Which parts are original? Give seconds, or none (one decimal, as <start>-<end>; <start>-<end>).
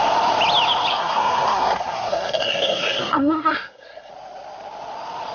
0.0-0.9; 4.1-5.3